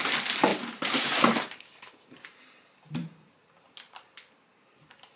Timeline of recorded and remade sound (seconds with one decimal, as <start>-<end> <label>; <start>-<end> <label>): 0.0-0.5 recorded; 0.5-3.5 remade; 3.5-5.2 recorded